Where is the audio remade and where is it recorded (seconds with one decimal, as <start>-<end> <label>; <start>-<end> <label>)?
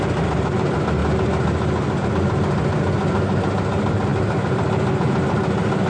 0.0-5.9 recorded